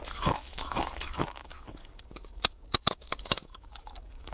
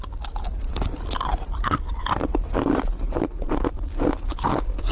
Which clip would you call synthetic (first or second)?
first